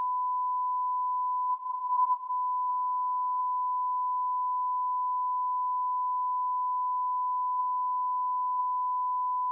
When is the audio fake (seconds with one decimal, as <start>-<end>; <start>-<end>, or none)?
1.5-2.3